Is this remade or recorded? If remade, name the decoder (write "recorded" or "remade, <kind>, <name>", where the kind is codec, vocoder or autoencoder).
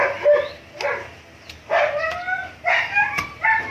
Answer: recorded